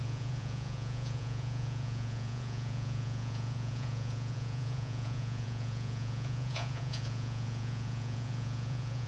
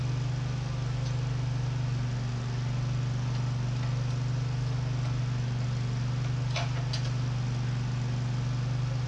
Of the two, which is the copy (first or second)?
first